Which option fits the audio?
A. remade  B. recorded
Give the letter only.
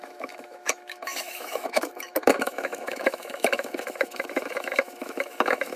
A